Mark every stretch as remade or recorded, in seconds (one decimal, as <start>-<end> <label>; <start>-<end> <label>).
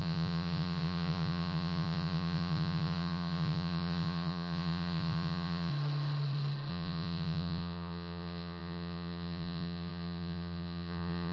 0.0-5.7 remade; 5.7-6.7 recorded; 6.7-11.3 remade